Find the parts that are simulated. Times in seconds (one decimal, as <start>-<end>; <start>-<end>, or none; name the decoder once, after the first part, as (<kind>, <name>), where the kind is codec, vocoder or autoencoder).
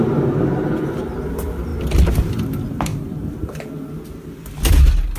none